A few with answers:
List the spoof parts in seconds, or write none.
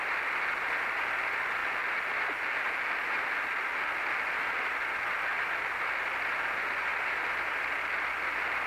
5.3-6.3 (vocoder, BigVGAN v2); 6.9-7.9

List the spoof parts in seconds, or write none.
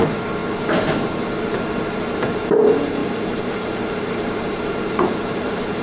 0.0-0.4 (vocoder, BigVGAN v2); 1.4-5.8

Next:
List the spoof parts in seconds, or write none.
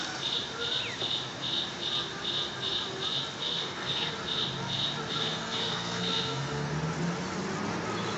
3.4-4.1 (codec, SNAC); 5.1-6.7